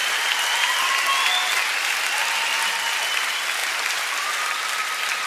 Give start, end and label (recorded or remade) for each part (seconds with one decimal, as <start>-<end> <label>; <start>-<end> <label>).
0.0-3.0 recorded; 3.0-5.3 remade